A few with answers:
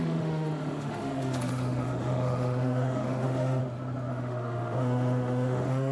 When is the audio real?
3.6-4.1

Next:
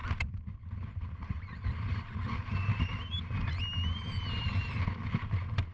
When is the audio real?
0.0-0.6; 2.7-4.3